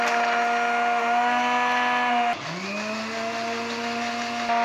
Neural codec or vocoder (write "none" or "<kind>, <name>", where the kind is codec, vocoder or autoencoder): none